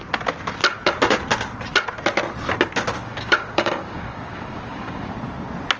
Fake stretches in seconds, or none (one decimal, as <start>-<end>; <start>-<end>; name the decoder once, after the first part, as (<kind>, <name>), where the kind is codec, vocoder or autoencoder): 3.0-5.1 (codec, DAC)

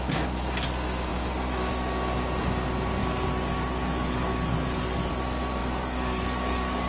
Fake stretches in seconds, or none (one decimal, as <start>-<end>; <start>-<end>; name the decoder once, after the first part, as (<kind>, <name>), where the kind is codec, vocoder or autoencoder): 3.0-5.1 (codec, DAC); 5.6-6.9